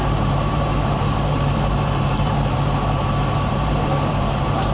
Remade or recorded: remade